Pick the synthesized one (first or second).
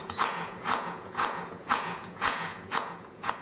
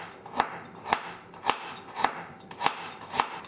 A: first